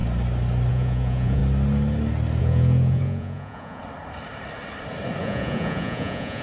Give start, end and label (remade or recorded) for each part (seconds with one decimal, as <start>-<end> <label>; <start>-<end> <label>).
0.0-0.7 recorded; 0.7-1.4 remade; 1.4-2.4 recorded; 2.4-3.8 remade; 3.8-5.2 recorded; 5.2-6.4 remade